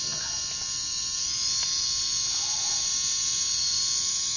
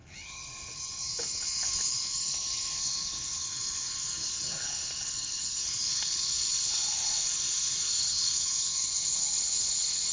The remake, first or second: second